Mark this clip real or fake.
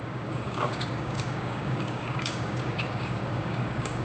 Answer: fake